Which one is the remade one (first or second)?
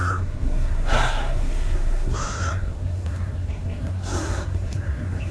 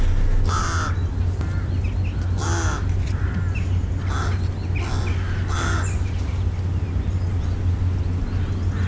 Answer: first